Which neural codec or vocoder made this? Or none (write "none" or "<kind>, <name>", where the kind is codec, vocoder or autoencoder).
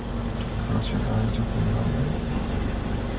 none